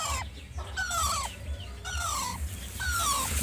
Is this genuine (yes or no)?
yes